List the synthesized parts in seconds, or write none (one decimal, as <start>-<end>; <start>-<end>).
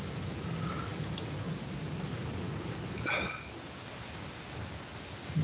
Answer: none